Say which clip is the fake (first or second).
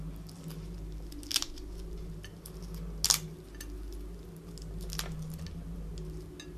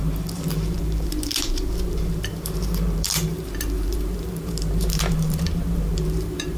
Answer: second